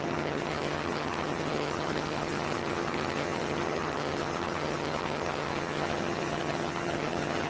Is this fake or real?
fake